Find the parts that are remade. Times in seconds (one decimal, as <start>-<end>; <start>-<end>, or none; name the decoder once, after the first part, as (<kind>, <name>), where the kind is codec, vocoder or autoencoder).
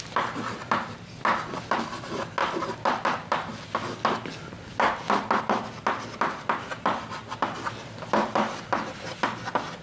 none